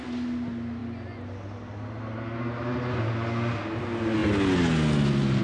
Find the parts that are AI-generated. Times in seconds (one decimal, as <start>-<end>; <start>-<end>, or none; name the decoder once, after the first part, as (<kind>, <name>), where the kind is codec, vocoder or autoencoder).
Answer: none